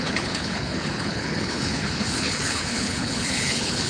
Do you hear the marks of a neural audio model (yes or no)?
yes